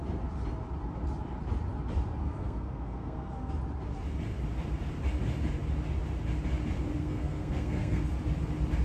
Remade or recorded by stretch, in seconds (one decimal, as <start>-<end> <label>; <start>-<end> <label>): 0.0-2.2 recorded; 2.2-3.5 remade; 3.5-7.0 recorded; 7.0-8.0 remade; 8.0-8.8 recorded